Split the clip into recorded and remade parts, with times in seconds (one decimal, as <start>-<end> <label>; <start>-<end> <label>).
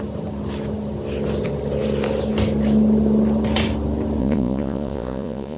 0.0-4.2 recorded; 4.2-5.6 remade